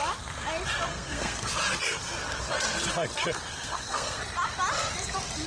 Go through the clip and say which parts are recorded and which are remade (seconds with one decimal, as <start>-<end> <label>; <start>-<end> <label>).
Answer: 0.0-0.9 recorded; 0.9-1.5 remade; 1.5-3.5 recorded; 3.5-4.2 remade; 4.2-5.5 recorded